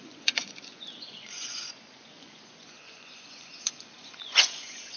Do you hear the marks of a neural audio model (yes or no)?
yes